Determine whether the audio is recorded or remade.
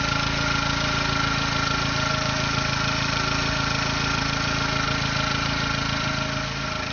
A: remade